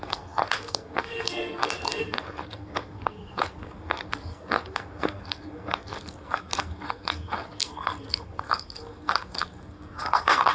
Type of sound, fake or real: fake